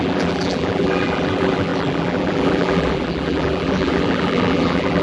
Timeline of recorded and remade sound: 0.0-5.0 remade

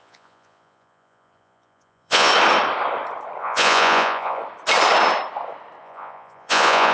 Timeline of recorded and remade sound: 0.0-2.3 remade; 2.3-3.4 recorded; 3.4-4.4 remade; 4.4-5.8 recorded; 5.8-6.9 remade